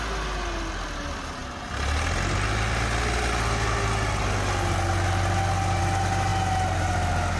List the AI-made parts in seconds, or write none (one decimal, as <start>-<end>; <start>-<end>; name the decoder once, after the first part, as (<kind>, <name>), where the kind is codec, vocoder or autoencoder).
none